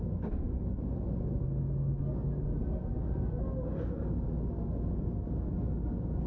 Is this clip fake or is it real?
real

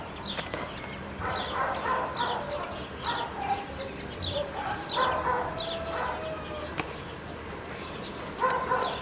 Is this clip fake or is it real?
real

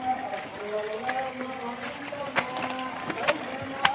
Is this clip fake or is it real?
real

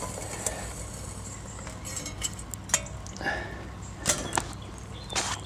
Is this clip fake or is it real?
real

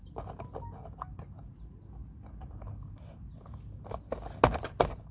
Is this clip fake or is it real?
real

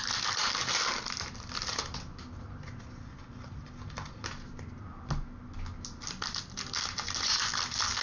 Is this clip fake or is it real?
real